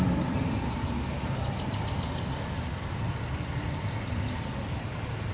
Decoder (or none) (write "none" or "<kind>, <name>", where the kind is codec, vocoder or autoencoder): none